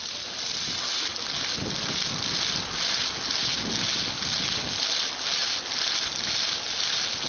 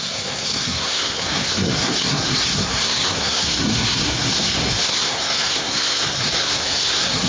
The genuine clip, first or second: first